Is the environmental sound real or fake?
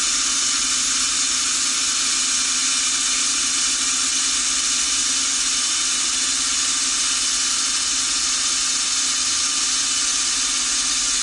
real